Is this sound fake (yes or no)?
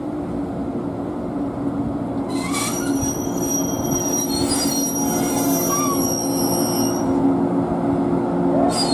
no